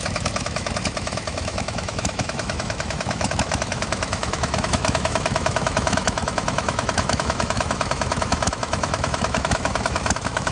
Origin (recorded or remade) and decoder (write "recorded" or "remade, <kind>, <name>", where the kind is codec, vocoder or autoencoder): remade, autoencoder, DAC-VAE